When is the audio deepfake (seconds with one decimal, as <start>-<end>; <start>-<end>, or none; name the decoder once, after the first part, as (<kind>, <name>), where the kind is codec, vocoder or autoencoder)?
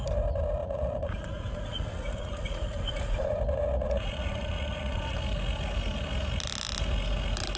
0.6-5.2 (vocoder, Vocos)